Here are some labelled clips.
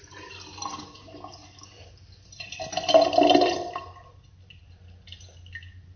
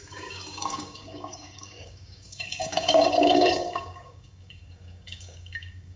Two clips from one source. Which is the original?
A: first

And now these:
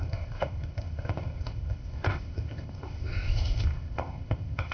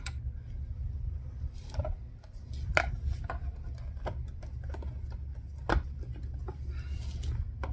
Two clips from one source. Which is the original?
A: second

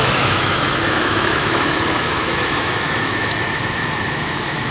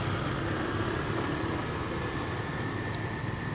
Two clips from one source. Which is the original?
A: second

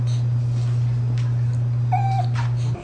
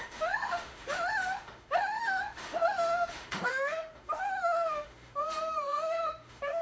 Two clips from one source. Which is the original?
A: first